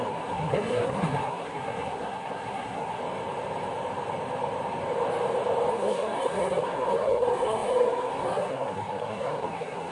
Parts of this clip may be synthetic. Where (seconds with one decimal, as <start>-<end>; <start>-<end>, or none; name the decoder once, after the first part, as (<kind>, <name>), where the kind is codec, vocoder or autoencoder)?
0.0-3.0 (codec, SNAC); 5.7-9.9